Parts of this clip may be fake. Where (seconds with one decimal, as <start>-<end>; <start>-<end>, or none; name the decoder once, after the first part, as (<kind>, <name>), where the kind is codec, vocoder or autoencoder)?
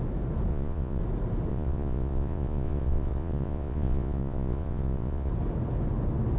0.5-1.0 (vocoder, Vocos); 1.5-5.3